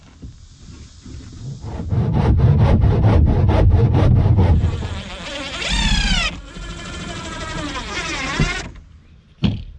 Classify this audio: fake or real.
real